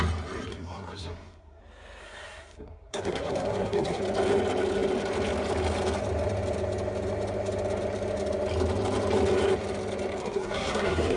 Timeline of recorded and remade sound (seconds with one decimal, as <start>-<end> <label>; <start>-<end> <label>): 0.0-0.5 recorded; 0.5-1.6 remade; 1.6-2.0 recorded; 2.0-4.0 remade; 4.0-10.2 recorded; 10.2-11.2 remade